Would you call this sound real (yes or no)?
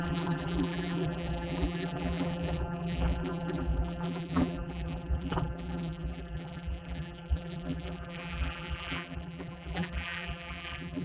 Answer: no